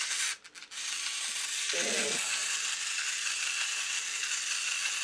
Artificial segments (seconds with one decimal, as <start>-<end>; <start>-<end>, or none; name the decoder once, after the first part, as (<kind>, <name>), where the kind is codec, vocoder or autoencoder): 0.6-1.2 (vocoder, BigVGAN v2); 2.4-3.9